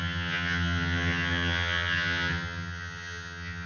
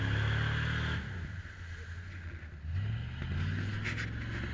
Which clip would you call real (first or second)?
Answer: second